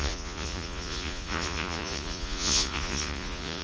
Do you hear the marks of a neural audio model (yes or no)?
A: yes